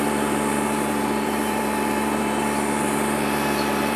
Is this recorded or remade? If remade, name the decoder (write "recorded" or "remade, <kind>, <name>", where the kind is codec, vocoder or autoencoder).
remade, vocoder, BigVGAN v2